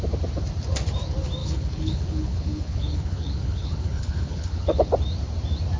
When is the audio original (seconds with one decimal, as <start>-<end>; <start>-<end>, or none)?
0.0-1.4; 4.9-5.8